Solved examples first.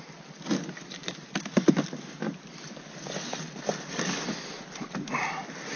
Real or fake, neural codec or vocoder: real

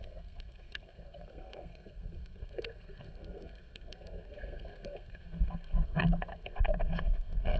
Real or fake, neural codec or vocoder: fake, codec, SNAC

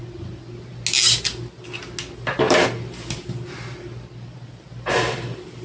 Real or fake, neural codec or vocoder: real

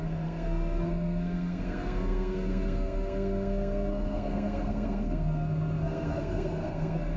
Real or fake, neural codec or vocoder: fake, codec, SNAC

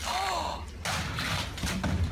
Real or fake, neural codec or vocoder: real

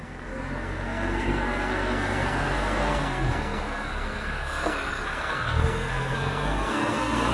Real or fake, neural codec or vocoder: fake, codec, SNAC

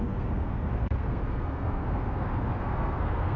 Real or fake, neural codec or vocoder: fake, codec, SNAC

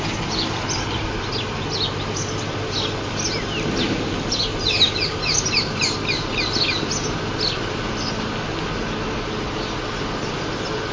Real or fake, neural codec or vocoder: real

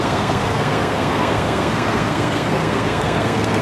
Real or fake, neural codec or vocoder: fake, codec, SNAC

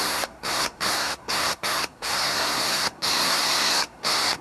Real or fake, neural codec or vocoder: fake, codec, SNAC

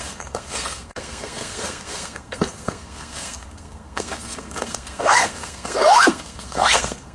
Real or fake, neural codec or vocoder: fake, codec, SNAC